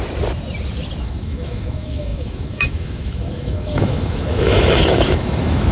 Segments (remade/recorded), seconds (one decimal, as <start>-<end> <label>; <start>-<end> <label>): 0.0-1.0 recorded; 1.0-5.7 remade